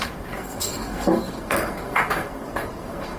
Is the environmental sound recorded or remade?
remade